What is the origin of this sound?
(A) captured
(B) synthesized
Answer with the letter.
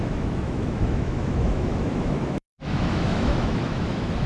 B